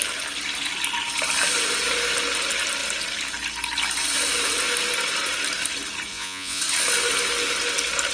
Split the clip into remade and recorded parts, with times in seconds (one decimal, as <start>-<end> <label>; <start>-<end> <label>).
0.0-6.1 recorded; 6.1-6.6 remade; 6.6-8.1 recorded